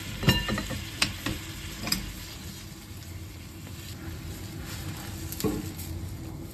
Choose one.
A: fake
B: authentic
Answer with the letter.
B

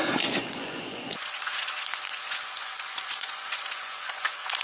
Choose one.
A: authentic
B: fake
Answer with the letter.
B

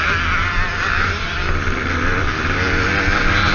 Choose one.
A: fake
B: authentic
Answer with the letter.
B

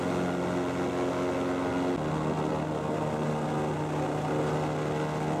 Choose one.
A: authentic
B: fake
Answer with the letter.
A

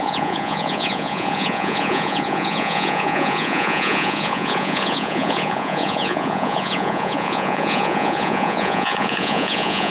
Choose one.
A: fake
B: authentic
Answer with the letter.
A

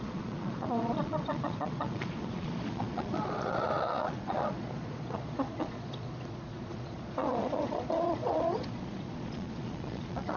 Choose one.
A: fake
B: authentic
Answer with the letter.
A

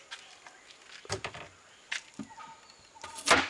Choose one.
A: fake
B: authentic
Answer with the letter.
B